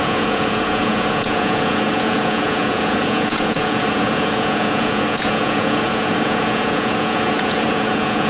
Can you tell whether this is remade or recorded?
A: remade